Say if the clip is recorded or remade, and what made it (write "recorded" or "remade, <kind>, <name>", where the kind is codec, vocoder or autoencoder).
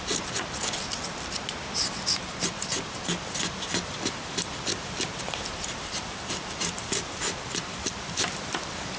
remade, vocoder, BigVGAN v2